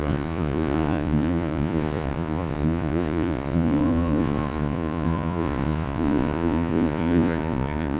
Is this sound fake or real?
fake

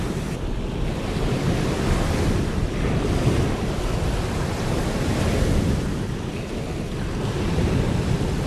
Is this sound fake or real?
real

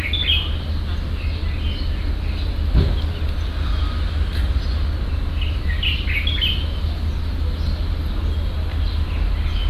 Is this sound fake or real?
real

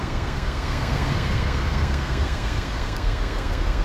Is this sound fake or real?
fake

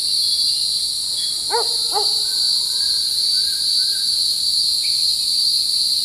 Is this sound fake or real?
real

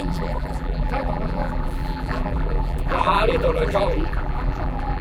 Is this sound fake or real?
fake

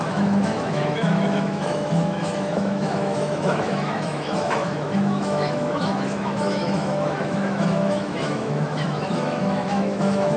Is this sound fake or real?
fake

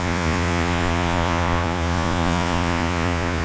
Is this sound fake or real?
fake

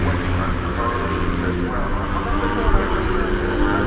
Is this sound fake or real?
real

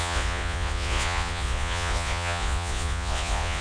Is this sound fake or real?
fake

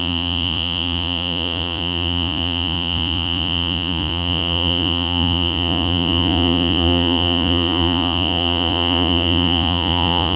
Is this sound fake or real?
fake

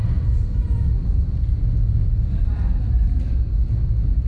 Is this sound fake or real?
real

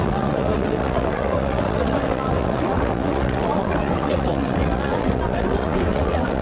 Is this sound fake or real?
fake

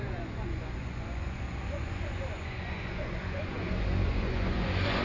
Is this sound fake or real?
fake